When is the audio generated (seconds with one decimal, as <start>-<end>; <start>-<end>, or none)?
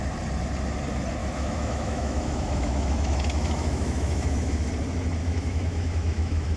1.2-4.7; 5.2-6.6